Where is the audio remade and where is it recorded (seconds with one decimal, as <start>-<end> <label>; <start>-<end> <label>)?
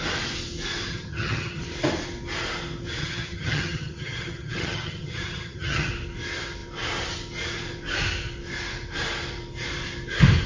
0.0-0.9 recorded; 0.9-1.6 remade; 1.6-3.0 recorded; 3.0-5.9 remade; 5.9-10.5 recorded